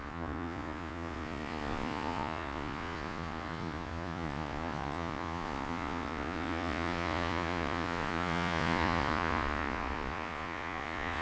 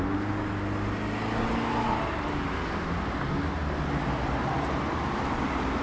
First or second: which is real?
second